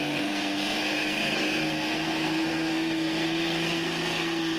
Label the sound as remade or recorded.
remade